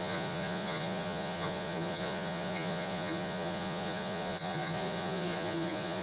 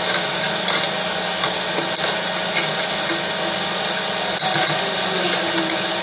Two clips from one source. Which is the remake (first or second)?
first